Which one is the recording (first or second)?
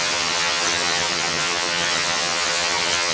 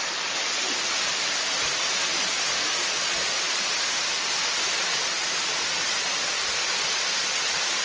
second